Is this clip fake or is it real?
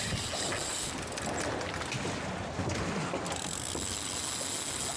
real